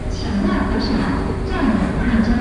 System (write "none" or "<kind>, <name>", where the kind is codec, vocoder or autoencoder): vocoder, BigVGAN v2